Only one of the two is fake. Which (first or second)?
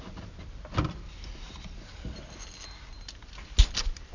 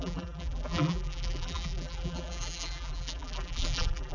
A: second